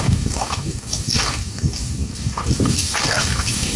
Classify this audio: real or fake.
fake